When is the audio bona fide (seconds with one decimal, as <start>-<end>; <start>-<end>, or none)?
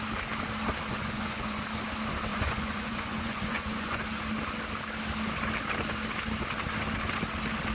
0.0-0.9; 1.6-2.3; 4.0-7.7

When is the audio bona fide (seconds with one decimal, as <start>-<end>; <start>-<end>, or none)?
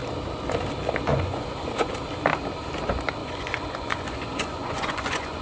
0.0-1.1; 1.9-3.2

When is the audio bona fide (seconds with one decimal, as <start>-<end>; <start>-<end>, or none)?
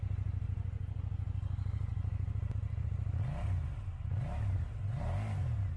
0.0-5.8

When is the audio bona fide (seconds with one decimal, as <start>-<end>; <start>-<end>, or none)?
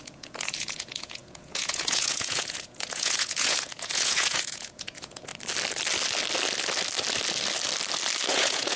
5.3-8.3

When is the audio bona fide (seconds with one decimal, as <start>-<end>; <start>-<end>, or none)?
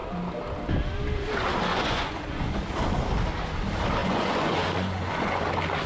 0.0-1.7; 2.6-4.0; 5.4-5.9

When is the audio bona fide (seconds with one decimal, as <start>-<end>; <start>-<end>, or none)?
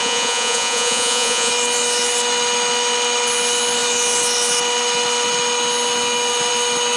1.5-7.0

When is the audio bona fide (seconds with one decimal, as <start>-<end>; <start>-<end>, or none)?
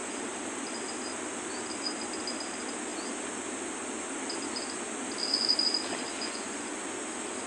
0.0-6.1; 6.7-7.5